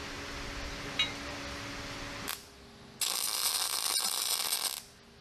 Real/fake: real